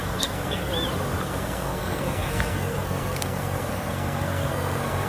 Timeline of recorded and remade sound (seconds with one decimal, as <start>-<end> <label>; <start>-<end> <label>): 0.0-0.7 remade; 0.7-1.2 recorded; 1.2-5.1 remade